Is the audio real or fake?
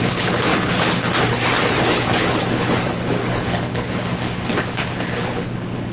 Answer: fake